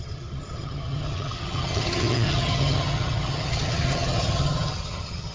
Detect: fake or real fake